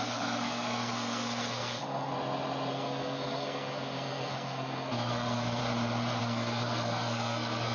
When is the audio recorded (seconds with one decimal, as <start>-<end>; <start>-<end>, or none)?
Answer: 2.1-2.7; 5.6-6.2